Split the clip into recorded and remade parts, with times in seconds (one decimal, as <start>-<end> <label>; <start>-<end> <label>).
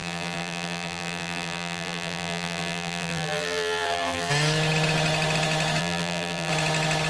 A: 0.0-4.3 remade; 4.3-5.8 recorded; 5.8-6.5 remade; 6.5-7.1 recorded